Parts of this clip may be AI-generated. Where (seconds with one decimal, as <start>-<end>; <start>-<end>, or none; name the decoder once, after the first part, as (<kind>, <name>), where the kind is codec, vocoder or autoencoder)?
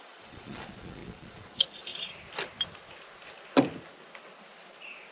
0.0-1.9 (vocoder, Vocos)